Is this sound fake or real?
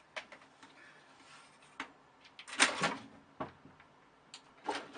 real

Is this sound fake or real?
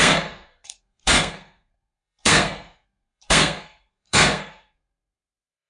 fake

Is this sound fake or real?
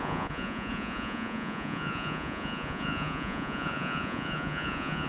fake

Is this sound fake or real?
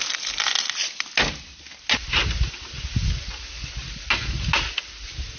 real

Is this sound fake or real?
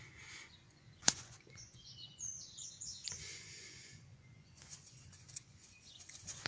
fake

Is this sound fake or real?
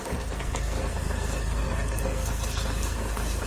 fake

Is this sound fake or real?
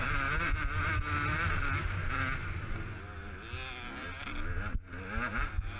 real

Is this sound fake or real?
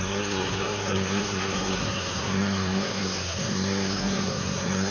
fake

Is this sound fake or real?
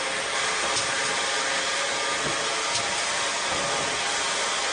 real